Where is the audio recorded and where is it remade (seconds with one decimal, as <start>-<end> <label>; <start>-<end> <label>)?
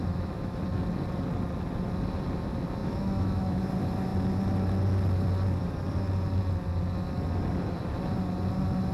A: 0.0-0.6 remade; 0.6-2.8 recorded; 2.8-3.6 remade; 3.6-8.9 recorded